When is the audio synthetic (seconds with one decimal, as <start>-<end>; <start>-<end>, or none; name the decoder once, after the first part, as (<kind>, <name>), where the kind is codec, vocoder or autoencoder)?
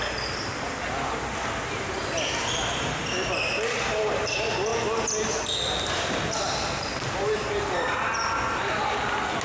none